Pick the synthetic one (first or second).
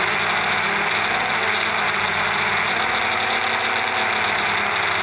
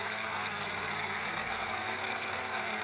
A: second